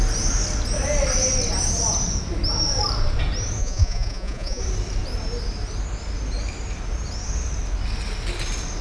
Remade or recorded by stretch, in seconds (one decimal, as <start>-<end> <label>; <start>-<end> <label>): 0.0-3.6 recorded; 3.6-4.6 remade; 4.6-8.8 recorded